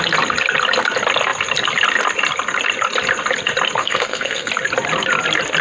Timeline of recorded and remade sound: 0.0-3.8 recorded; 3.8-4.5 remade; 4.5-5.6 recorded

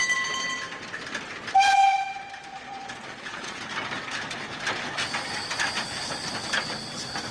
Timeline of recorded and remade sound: 0.0-2.5 recorded; 2.5-3.6 remade; 3.6-7.3 recorded

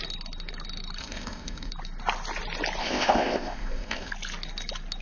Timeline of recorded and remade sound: 0.0-1.0 recorded; 1.0-1.7 remade; 1.7-2.8 recorded; 2.8-4.1 remade; 4.1-5.0 recorded

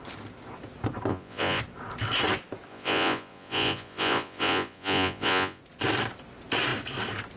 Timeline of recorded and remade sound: 0.0-1.1 recorded; 1.1-1.6 remade; 1.6-2.7 recorded; 2.7-5.6 remade; 5.6-7.4 recorded

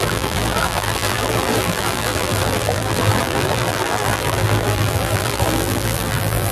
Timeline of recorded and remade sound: 0.0-6.5 remade

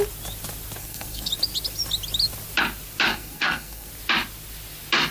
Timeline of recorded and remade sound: 0.0-0.8 recorded; 0.8-1.3 remade; 1.3-3.1 recorded; 3.1-3.9 remade; 3.9-5.1 recorded

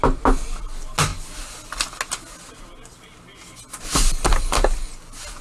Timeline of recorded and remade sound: 0.0-5.4 recorded